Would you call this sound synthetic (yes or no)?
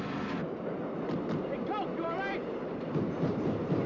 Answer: no